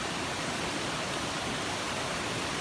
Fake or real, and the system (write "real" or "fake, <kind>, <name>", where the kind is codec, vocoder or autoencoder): real